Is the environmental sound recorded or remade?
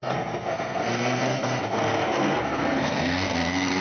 remade